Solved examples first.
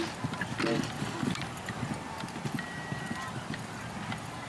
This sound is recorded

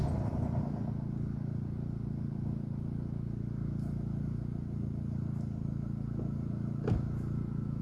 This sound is recorded